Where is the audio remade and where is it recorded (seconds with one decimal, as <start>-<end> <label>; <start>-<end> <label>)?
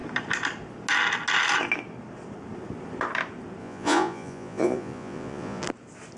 0.0-3.6 recorded; 3.6-5.6 remade; 5.6-6.2 recorded